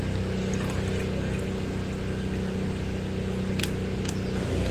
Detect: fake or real real